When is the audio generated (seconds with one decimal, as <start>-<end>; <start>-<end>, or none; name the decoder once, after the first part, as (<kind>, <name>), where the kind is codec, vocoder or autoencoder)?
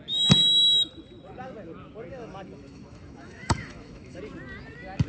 2.1-4.2 (autoencoder, DAC-VAE)